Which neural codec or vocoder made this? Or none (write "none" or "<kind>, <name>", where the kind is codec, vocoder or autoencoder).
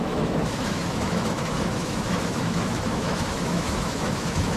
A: autoencoder, DAC-VAE